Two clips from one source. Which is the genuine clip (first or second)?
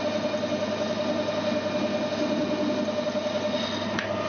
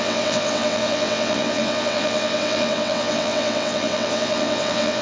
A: first